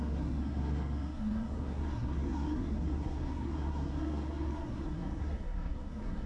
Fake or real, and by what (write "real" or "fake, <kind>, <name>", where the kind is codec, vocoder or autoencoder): fake, codec, SNAC